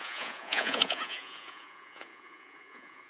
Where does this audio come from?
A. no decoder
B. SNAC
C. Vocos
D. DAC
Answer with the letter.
C